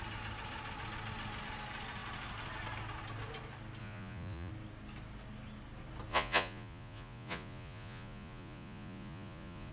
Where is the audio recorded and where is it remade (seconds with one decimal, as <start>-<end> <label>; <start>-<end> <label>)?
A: 0.0-3.8 recorded; 3.8-4.5 remade; 4.5-6.1 recorded; 6.1-9.7 remade